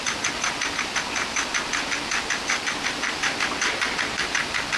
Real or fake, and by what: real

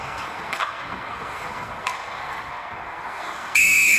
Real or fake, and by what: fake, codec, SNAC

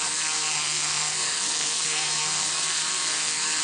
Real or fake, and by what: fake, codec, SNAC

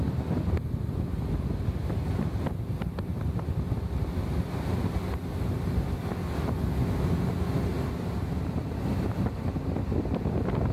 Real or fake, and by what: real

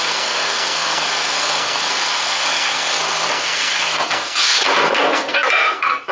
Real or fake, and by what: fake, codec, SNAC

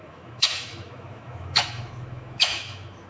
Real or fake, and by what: fake, autoencoder, DAC-VAE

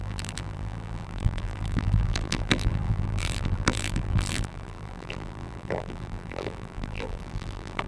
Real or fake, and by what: fake, vocoder, BigVGAN v2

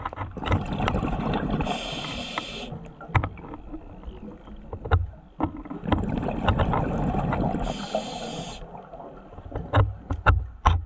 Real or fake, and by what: real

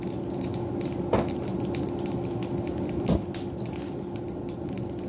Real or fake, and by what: real